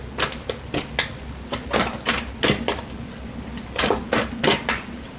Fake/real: real